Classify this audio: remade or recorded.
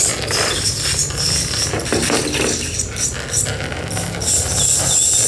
recorded